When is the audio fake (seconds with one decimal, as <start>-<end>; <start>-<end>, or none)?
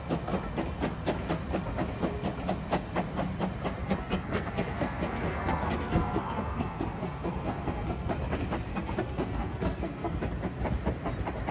3.8-8.1; 8.7-10.2